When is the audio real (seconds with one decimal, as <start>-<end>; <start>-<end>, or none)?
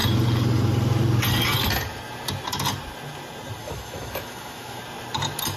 0.0-3.6; 4.8-5.6